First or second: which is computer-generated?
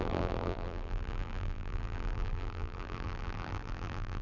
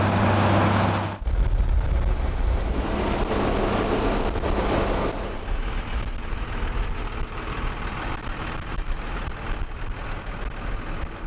first